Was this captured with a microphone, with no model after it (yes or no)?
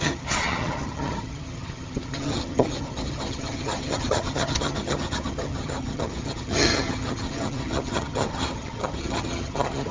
no